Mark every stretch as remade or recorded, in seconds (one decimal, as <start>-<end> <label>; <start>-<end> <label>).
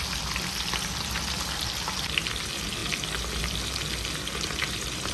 0.0-5.1 recorded